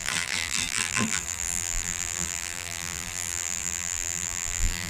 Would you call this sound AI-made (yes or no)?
yes